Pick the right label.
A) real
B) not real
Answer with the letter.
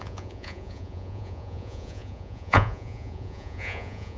B